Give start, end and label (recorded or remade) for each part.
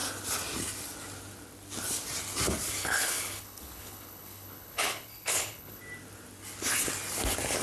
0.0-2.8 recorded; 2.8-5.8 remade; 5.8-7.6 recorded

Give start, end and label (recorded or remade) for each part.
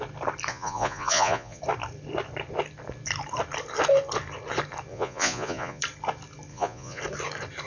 0.0-0.5 recorded; 0.5-1.6 remade; 1.6-4.9 recorded; 4.9-5.8 remade; 5.8-6.5 recorded; 6.5-7.0 remade; 7.0-7.7 recorded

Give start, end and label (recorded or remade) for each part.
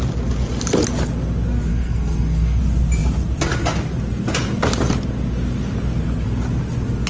0.0-1.7 recorded; 1.7-2.6 remade; 2.6-7.1 recorded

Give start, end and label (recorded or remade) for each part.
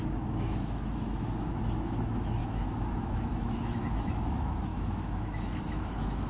0.0-6.3 remade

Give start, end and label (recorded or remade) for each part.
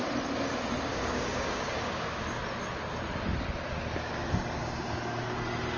0.0-0.9 recorded; 0.9-2.2 remade; 2.2-5.8 recorded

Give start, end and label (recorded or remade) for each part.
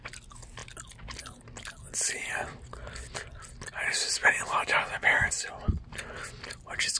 0.0-7.0 recorded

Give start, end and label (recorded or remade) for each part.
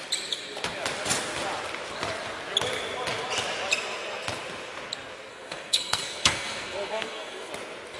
0.0-5.3 recorded; 5.3-7.5 remade; 7.5-8.0 recorded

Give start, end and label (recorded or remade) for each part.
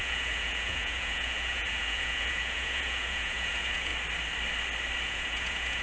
0.0-3.9 remade; 3.9-5.0 recorded; 5.0-5.8 remade